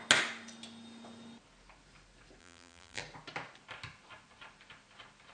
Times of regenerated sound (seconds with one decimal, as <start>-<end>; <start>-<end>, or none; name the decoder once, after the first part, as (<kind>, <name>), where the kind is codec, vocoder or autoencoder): 2.4-3.0 (vocoder, BigVGAN v2)